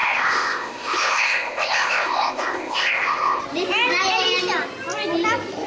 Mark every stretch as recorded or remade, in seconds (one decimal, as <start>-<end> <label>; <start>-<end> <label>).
0.0-3.4 remade; 3.4-5.7 recorded